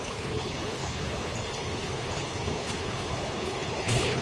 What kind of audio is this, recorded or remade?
remade